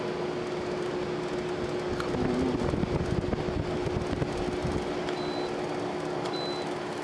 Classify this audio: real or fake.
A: real